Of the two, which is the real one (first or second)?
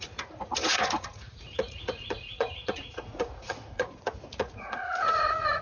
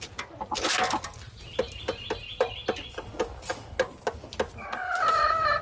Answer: second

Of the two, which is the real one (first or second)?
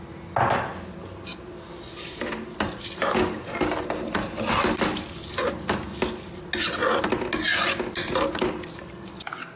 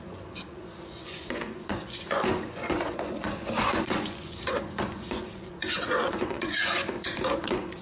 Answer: first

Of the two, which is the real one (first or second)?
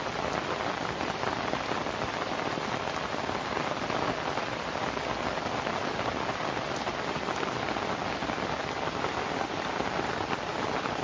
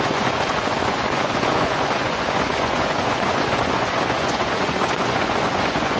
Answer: first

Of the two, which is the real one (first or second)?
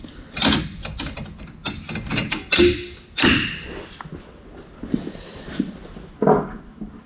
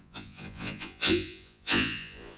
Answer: first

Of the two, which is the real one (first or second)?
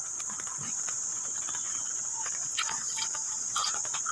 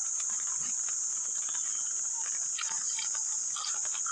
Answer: second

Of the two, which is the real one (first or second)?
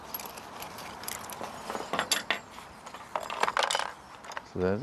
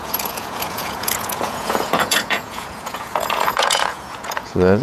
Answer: first